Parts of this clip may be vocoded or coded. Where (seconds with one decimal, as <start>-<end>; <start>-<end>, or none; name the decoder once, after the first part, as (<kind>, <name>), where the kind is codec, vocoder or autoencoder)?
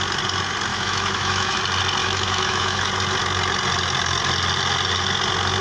0.7-1.6 (autoencoder, DAC-VAE); 2.0-2.9